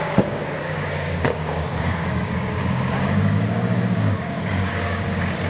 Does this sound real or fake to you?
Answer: fake